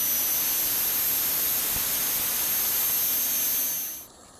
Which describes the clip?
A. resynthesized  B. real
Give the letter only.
B